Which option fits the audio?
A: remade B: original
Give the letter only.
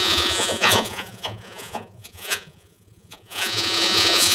A